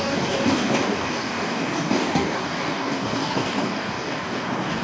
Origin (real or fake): fake